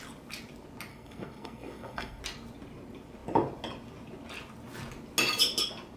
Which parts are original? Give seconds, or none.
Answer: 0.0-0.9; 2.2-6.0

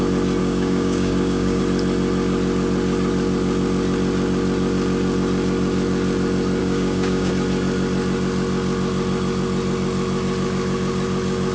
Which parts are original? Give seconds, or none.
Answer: 0.0-0.4; 1.6-6.6; 7.3-11.5

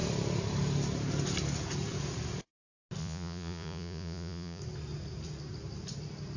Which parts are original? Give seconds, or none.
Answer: 0.0-3.0; 4.6-6.4

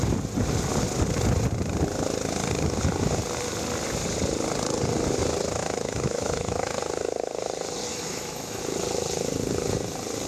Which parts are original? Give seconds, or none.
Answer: 0.0-5.6; 6.8-7.9; 8.6-10.3

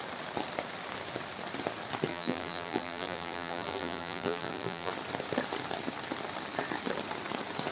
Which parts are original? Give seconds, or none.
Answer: 0.0-2.1; 4.9-7.7

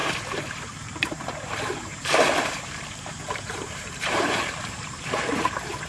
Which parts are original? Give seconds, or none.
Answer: none

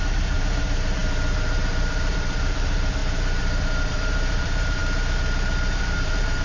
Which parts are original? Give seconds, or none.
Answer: 4.8-5.8